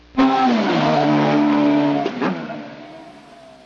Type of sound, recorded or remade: recorded